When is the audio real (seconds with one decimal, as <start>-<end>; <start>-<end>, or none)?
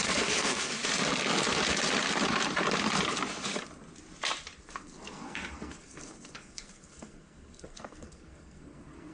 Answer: 0.8-4.6